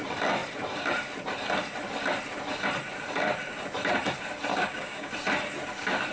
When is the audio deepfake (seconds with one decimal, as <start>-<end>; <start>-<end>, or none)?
4.5-5.1